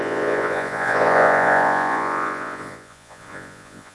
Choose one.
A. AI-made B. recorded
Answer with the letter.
A